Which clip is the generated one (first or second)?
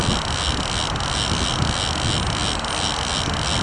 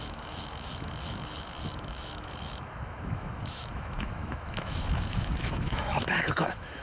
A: second